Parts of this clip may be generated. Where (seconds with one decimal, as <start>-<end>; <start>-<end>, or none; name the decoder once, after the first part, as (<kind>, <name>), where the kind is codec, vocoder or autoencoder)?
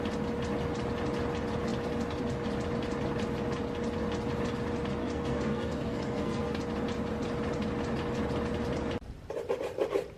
5.0-6.6 (codec, SNAC)